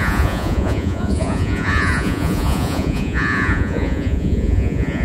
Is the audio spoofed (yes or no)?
yes